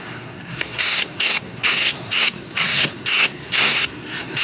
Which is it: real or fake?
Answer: fake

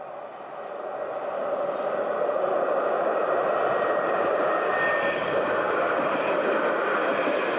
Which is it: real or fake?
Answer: real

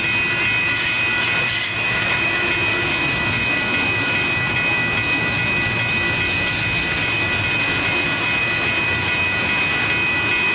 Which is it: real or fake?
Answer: real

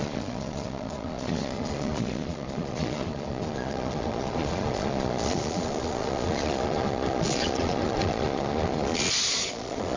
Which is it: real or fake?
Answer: fake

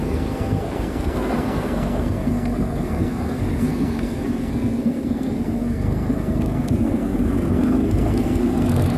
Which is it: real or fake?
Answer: fake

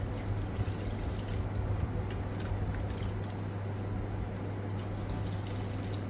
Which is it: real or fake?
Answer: real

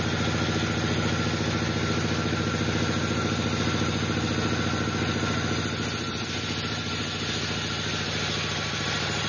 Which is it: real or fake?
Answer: real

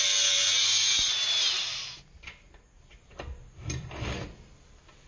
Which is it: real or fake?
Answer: real